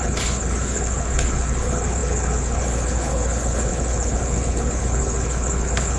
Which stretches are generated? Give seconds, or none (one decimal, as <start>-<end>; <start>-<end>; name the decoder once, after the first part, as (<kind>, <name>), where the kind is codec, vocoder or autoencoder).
0.0-6.0 (codec, HILCodec)